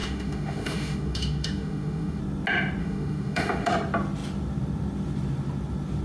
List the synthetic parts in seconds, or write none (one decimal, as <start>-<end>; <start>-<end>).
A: 0.0-2.2; 2.8-3.7